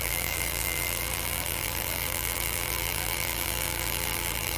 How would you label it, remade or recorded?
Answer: remade